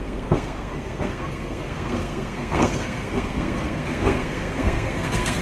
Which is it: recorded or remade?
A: remade